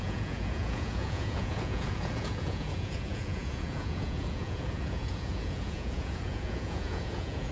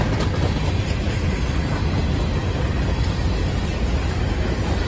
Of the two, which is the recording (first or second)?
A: second